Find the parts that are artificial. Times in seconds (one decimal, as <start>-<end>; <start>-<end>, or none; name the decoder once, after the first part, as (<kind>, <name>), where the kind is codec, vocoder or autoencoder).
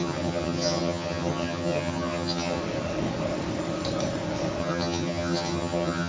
0.0-2.6 (vocoder, HiFi-GAN); 4.6-6.1